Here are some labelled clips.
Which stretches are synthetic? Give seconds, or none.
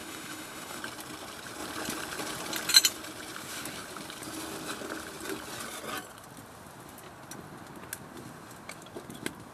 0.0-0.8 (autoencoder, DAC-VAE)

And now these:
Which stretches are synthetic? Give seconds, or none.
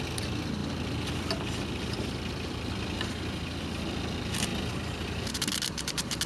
none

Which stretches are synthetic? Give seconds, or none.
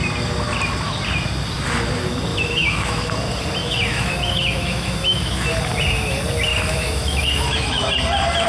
2.3-3.1 (autoencoder, DAC-VAE); 3.6-5.5; 6.5-7.9